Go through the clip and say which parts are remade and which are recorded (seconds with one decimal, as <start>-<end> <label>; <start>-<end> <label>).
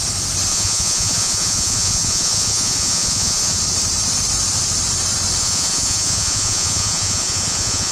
0.0-0.5 recorded; 0.5-3.6 remade; 3.6-5.4 recorded; 5.4-7.9 remade